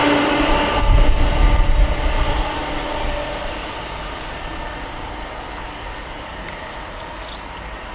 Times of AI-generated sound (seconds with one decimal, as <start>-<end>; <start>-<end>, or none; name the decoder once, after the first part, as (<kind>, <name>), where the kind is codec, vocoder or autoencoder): none